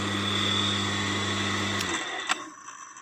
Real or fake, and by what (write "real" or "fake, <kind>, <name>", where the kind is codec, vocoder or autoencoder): real